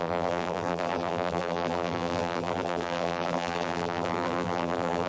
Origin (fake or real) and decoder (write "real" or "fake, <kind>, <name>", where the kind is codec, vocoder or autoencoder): fake, vocoder, BigVGAN v2